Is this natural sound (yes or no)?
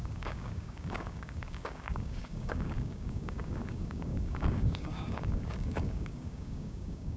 no